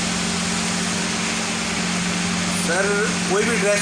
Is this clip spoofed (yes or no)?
no